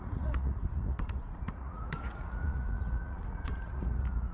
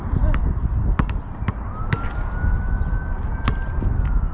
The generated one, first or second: first